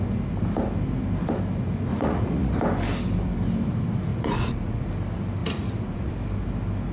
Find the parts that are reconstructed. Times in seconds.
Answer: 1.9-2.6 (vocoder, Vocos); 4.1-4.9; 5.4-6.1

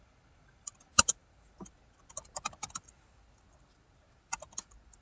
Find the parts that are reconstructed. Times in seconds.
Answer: none

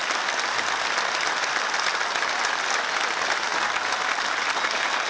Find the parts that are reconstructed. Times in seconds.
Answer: none

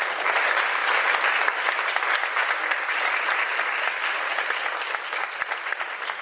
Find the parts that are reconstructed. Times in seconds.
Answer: none

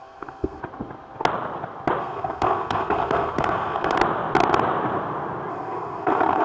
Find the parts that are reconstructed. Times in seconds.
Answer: 0.0-0.6 (codec, SNAC); 2.0-4.0; 5.5-6.4

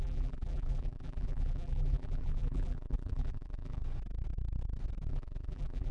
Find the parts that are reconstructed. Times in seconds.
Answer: 0.0-3.8 (vocoder, BigVGAN v2); 5.1-5.9

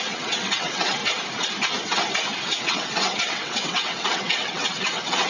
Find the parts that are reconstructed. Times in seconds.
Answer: 0.0-1.0 (vocoder, WaveNeXt); 2.6-5.3

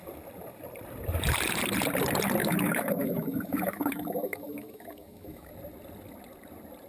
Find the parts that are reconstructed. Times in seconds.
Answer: 2.4-5.5 (autoencoder, DAC-VAE)